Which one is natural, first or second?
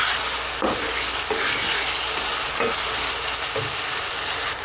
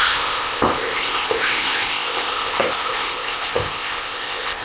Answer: first